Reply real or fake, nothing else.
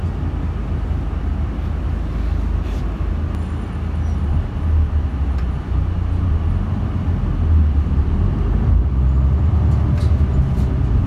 real